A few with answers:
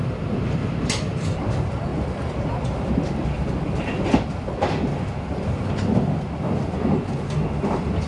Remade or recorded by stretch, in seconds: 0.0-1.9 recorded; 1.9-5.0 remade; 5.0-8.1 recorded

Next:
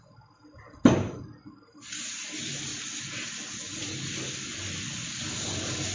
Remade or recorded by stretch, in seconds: 0.0-5.9 recorded

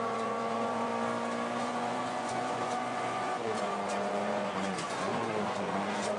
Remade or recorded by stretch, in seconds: 0.0-0.9 remade; 0.9-1.6 recorded; 1.6-6.2 remade

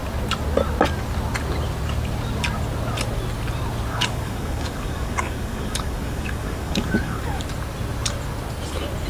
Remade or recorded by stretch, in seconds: 0.0-3.9 recorded; 3.9-7.4 remade; 7.4-9.1 recorded

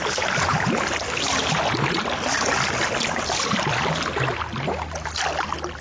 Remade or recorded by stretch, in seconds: 0.0-5.8 recorded

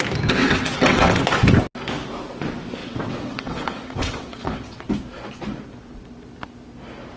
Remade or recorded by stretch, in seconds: 0.0-0.4 recorded; 0.4-1.2 remade; 1.2-2.8 recorded; 2.8-4.9 remade; 4.9-7.2 recorded